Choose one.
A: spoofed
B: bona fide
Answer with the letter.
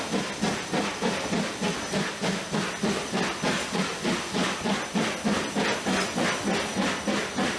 B